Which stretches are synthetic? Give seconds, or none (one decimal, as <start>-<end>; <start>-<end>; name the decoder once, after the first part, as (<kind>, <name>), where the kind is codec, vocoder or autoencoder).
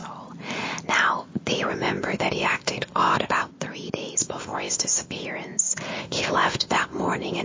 1.7-3.5 (codec, ZipCodec); 4.2-5.2; 6.0-7.4